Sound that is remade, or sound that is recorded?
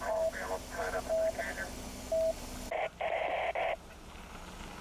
recorded